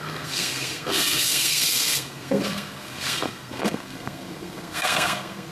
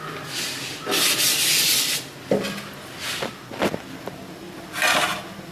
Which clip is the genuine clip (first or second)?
second